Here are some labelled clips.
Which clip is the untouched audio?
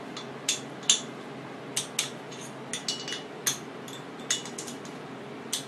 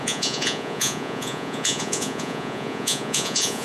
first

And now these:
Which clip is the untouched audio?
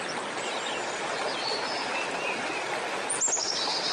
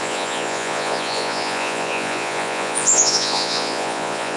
first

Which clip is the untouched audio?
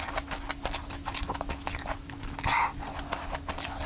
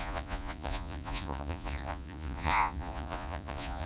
first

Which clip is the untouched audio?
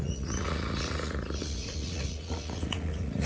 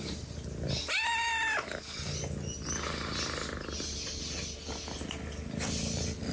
second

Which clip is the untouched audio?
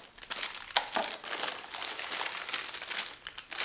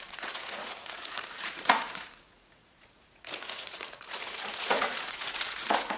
first